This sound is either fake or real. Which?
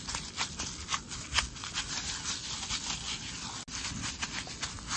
real